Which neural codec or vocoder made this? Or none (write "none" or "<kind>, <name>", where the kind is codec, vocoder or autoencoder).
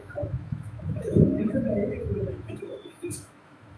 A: autoencoder, DAC-VAE